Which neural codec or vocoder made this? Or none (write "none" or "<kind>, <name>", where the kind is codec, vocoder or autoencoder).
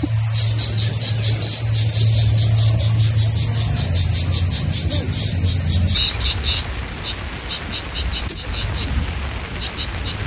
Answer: none